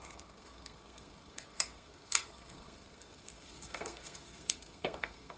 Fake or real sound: fake